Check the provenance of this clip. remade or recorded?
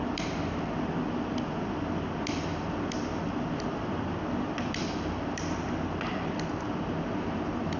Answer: recorded